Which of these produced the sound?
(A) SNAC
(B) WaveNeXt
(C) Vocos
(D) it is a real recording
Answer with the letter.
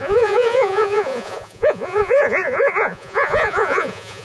C